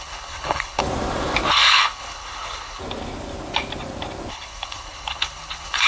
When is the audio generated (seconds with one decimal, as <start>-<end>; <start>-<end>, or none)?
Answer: 0.0-0.8; 1.5-2.8; 4.3-5.9